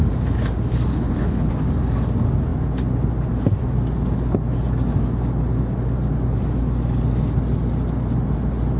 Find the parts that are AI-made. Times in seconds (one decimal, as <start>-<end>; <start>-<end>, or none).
0.9-1.5